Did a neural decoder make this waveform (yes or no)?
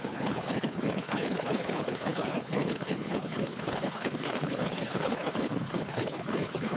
yes